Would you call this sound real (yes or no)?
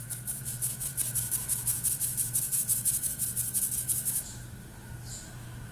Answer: no